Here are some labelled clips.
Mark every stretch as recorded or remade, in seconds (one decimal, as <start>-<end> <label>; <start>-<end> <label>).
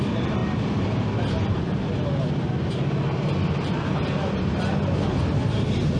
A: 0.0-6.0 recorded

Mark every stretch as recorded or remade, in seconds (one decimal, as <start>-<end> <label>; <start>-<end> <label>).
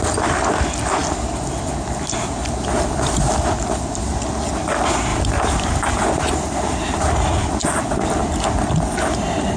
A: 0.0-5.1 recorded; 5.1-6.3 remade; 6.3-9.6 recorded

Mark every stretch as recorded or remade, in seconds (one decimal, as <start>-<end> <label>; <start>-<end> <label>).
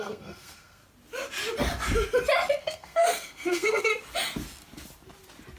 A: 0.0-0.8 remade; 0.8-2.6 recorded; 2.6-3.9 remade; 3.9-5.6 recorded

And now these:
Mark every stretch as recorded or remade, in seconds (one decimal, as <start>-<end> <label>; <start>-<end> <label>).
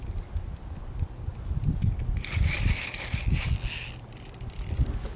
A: 0.0-1.3 remade; 1.3-4.0 recorded; 4.0-5.2 remade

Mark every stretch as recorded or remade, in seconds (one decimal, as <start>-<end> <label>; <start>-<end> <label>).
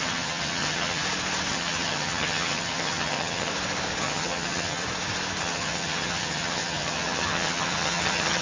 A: 0.0-1.0 remade; 1.0-1.5 recorded; 1.5-3.5 remade; 3.5-4.0 recorded; 4.0-4.8 remade; 4.8-5.4 recorded; 5.4-8.4 remade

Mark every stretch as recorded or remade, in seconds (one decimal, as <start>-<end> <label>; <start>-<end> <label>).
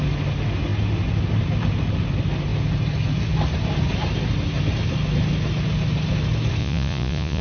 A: 0.0-6.6 recorded; 6.6-7.4 remade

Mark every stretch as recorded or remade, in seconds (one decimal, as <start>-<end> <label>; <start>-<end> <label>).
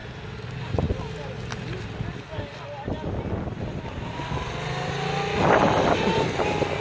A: 0.0-6.8 recorded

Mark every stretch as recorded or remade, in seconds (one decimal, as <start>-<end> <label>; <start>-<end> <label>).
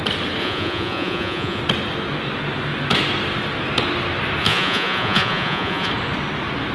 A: 0.0-0.4 recorded; 0.4-1.6 remade; 1.6-4.4 recorded; 4.4-5.9 remade; 5.9-6.7 recorded